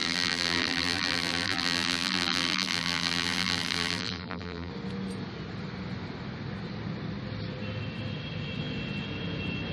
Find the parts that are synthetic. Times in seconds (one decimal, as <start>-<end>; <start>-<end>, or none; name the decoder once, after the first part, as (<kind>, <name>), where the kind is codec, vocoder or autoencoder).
0.0-4.7 (vocoder, BigVGAN v2)